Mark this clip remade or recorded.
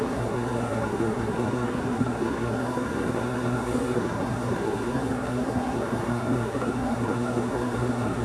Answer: remade